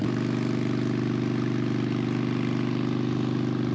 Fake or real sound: real